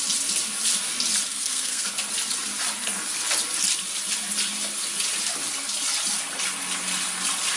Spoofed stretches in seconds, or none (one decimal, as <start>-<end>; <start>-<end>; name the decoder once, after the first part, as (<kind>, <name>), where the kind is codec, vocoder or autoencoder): 1.3-1.9 (codec, SNAC)